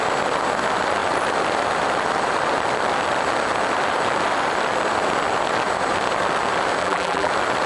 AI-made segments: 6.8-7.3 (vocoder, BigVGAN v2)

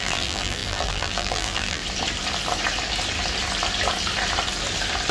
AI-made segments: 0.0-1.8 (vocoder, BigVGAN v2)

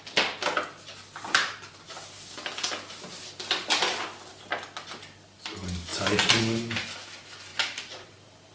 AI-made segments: 5.9-6.4 (vocoder, BigVGAN v2); 7.5-8.5

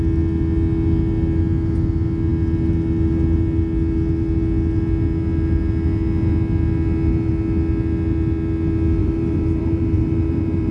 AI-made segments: 9.0-10.7 (vocoder, BigVGAN v2)

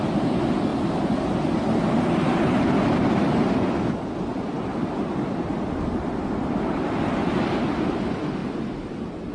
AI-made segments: 0.7-2.6 (vocoder, BigVGAN v2); 4.7-7.6